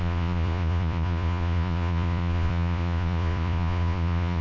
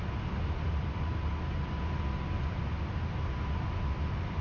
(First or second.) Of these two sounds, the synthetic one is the first